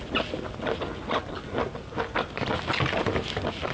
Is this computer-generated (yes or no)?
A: no